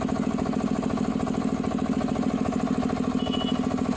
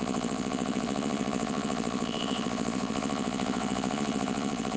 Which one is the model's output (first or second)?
second